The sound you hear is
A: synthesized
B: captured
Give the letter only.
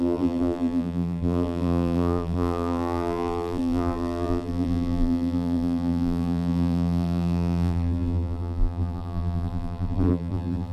A